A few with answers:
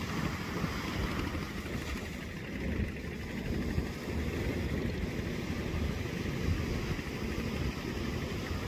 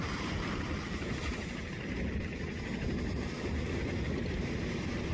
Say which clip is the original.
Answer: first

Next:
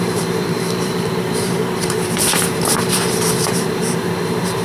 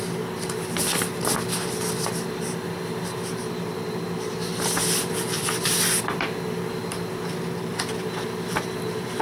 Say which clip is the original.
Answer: second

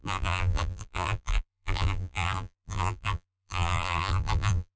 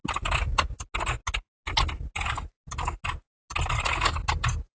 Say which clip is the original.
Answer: second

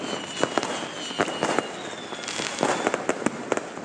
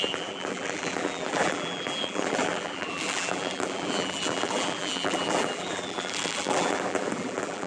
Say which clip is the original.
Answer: first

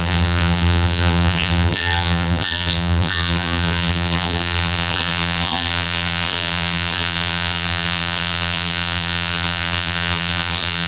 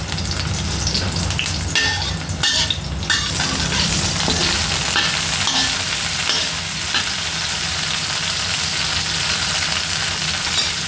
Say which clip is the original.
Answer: second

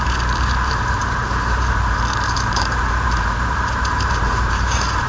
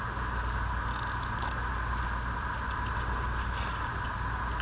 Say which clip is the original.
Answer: second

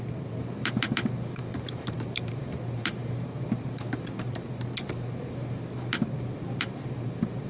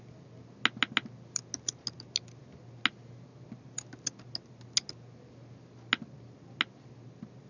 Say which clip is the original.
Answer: second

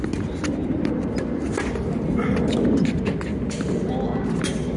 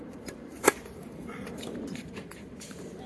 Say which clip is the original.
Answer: first